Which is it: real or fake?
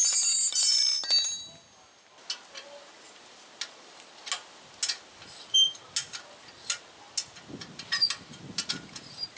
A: real